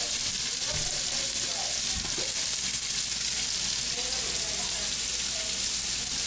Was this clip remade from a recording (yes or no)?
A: no